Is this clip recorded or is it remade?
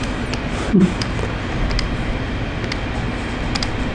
recorded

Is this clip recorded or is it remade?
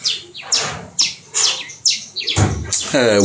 recorded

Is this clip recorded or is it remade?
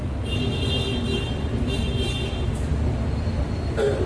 recorded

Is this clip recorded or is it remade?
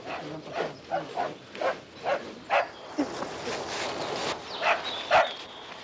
recorded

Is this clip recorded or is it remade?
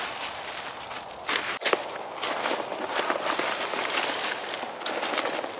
recorded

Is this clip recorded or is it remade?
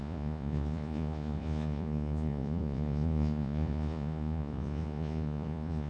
remade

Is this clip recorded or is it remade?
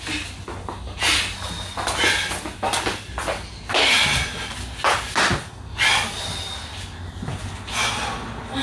recorded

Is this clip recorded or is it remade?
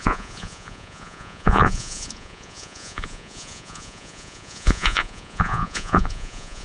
remade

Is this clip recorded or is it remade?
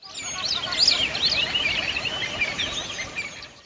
recorded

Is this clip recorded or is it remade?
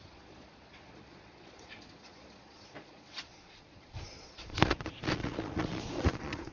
remade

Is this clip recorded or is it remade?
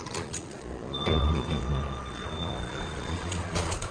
remade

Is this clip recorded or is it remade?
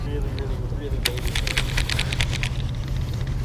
recorded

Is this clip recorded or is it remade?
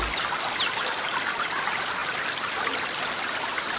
recorded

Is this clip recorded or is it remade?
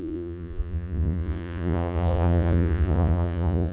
remade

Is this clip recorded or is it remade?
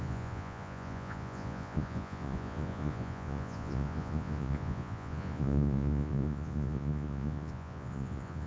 remade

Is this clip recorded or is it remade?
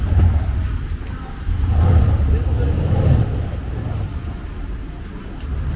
recorded